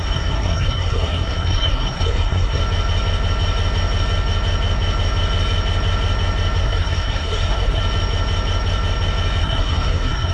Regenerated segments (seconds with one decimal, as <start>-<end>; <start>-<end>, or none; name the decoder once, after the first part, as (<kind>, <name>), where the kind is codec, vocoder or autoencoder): 0.0-2.6 (codec, SNAC); 6.6-7.8; 9.4-10.3